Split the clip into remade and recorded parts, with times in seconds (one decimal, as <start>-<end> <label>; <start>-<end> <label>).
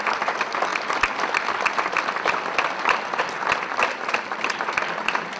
0.0-5.4 recorded